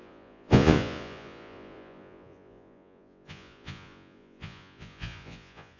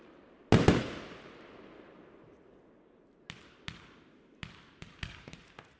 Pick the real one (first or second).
second